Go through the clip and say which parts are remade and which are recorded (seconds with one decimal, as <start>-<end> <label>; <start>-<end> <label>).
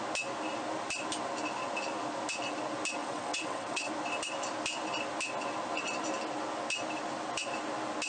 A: 0.0-3.0 recorded; 3.0-3.9 remade; 3.9-8.1 recorded